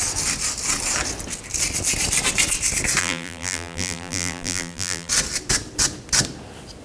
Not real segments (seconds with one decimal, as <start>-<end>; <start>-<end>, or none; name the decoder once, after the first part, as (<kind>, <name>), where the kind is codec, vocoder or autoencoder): 3.0-5.1 (vocoder, BigVGAN v2)

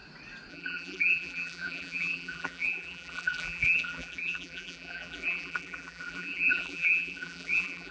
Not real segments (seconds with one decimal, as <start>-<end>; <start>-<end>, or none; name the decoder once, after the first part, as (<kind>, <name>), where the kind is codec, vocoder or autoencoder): 0.5-7.9 (vocoder, BigVGAN v2)

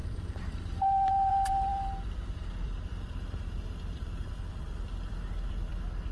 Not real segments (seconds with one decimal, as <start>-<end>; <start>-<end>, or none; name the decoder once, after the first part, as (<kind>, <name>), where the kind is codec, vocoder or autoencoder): 0.0-6.1 (vocoder, BigVGAN v2)

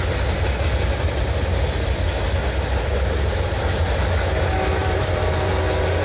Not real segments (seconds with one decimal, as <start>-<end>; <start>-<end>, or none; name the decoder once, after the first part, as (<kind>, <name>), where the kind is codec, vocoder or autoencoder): 2.9-3.6 (vocoder, BigVGAN v2); 4.8-5.5